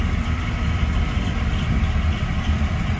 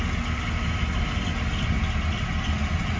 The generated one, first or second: first